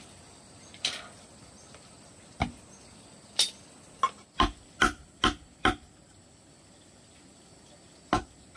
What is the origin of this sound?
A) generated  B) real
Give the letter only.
B